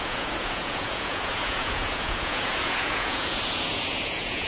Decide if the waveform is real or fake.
fake